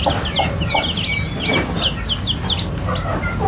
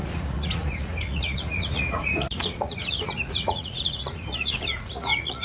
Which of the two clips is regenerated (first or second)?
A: second